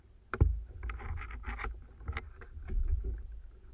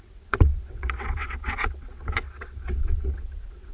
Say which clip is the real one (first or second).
first